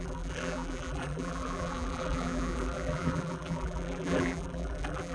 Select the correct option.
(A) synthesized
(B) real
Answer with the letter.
A